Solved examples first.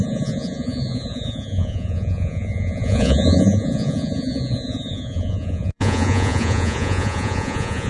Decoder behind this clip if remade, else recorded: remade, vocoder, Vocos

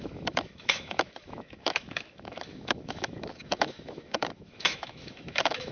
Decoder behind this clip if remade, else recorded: remade, autoencoder, DAC-VAE